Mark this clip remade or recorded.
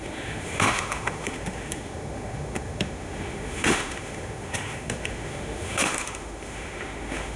remade